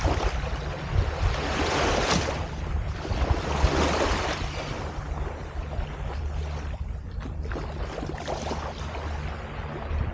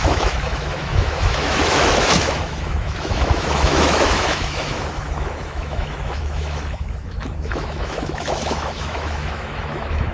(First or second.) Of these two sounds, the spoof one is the second